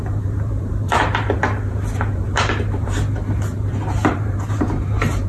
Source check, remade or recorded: remade